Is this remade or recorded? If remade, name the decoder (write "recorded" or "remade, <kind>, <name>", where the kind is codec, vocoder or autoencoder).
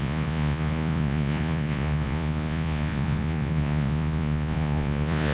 remade, vocoder, Vocos